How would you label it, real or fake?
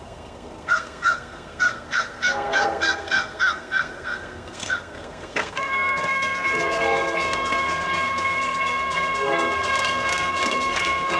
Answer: fake